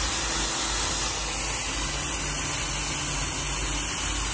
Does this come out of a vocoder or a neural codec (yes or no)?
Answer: no